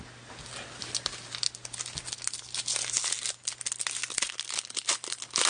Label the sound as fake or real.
real